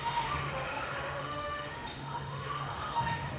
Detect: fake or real fake